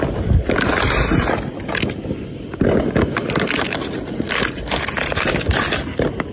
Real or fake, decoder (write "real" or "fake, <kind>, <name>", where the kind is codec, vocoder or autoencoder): real